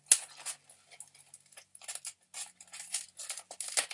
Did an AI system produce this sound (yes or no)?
no